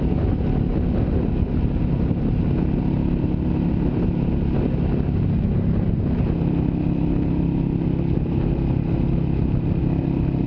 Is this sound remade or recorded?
recorded